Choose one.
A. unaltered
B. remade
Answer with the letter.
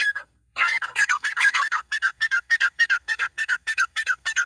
B